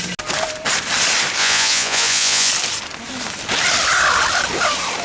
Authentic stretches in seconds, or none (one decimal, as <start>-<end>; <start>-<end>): 0.0-1.4; 2.5-5.0